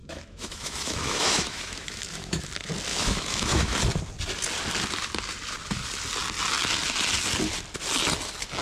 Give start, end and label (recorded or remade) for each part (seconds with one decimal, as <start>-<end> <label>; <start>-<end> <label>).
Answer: 0.0-2.5 remade; 2.5-2.9 recorded; 2.9-3.8 remade; 3.8-8.6 recorded